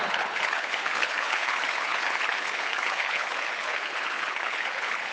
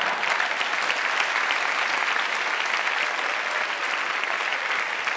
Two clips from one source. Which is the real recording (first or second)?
second